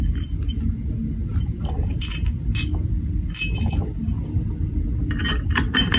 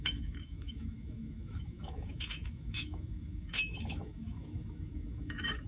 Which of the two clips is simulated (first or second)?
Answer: second